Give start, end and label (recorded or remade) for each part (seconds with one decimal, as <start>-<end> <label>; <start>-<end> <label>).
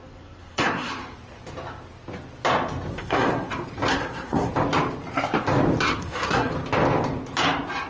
0.0-0.9 remade; 0.9-2.9 recorded; 2.9-3.5 remade; 3.5-3.9 recorded; 3.9-4.5 remade; 4.5-6.0 recorded; 6.0-6.5 remade; 6.5-7.9 recorded